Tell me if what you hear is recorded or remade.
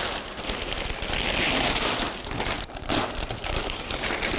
recorded